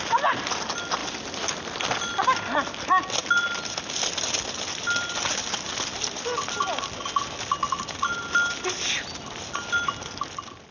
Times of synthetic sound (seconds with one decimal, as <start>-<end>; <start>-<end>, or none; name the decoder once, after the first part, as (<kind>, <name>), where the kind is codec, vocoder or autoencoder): none